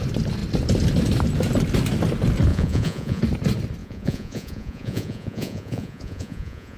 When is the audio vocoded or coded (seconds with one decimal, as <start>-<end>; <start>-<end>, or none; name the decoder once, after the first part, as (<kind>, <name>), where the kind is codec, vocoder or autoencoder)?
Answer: 2.5-3.2 (vocoder, Vocos); 3.8-6.8